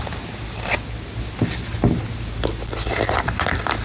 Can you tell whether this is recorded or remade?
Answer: recorded